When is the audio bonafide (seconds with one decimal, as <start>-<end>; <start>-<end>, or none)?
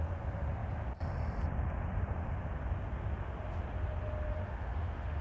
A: 0.0-4.3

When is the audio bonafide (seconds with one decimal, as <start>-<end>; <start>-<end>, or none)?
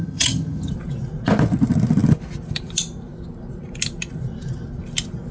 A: 0.7-5.3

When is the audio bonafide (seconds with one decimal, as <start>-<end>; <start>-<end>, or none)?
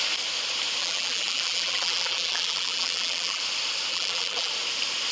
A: 0.0-0.8; 3.4-3.9; 4.5-5.1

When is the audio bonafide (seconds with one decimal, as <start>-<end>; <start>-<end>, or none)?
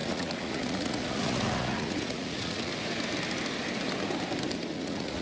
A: 2.7-4.7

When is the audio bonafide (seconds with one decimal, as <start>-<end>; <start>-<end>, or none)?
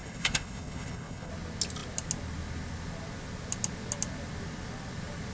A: 1.3-5.3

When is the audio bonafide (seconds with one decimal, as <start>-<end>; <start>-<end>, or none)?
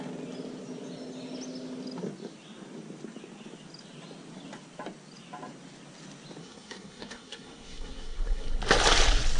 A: 0.0-6.4; 8.6-9.4